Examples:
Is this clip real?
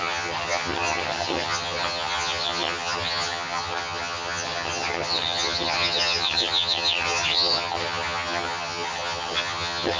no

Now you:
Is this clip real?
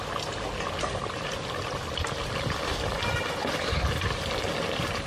yes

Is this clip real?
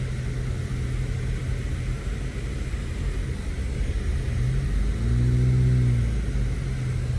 yes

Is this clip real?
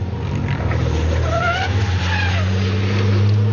yes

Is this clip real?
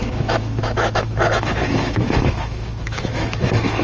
no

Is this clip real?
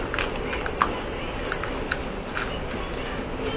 yes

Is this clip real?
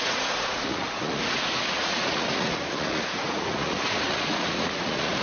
no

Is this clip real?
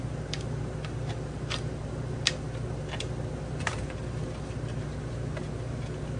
no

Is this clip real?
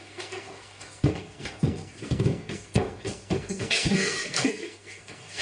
no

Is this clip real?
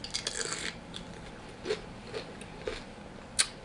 yes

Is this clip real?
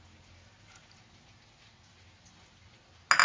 yes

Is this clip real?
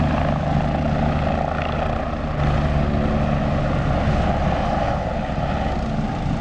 yes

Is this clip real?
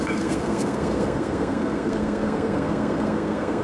no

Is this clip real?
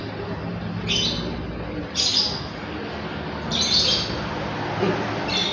yes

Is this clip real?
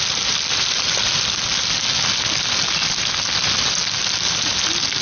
yes